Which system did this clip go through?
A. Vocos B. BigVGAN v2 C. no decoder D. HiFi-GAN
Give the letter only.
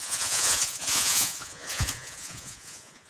A